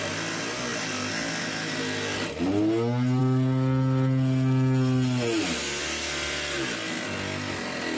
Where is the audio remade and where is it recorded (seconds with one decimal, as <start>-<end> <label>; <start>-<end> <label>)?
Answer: 0.0-8.0 recorded